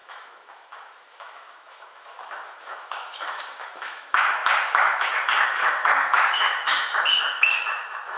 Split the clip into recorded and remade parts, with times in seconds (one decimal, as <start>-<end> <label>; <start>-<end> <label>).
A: 0.0-8.2 remade